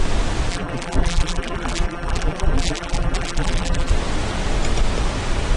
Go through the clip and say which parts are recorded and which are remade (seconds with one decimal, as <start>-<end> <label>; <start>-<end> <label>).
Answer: 0.0-0.5 recorded; 0.5-3.9 remade; 3.9-5.6 recorded